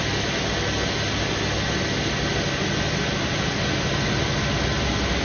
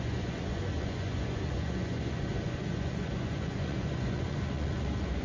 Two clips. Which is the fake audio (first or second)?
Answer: second